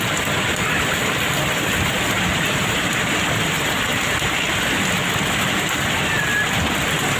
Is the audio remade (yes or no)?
no